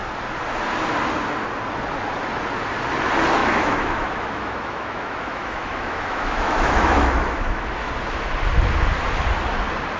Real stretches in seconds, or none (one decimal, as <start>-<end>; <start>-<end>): 0.0-3.4; 7.9-10.0